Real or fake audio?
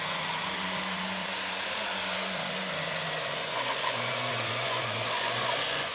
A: fake